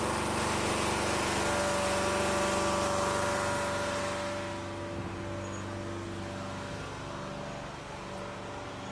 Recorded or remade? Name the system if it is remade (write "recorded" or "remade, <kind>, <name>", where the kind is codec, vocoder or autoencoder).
recorded